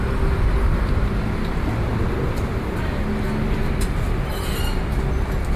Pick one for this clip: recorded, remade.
recorded